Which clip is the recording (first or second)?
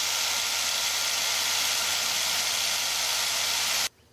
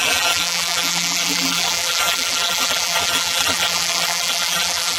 first